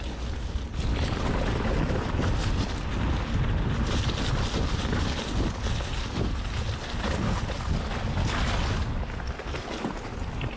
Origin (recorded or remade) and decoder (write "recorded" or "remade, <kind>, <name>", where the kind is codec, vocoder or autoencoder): recorded